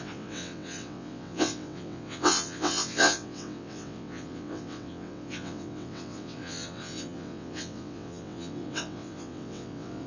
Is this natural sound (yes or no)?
no